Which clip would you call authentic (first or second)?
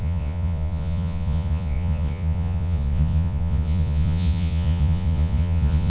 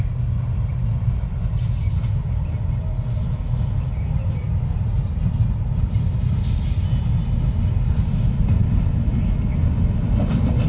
second